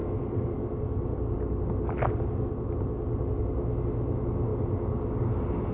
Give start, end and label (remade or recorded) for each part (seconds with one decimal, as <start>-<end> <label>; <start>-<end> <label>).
0.0-5.7 recorded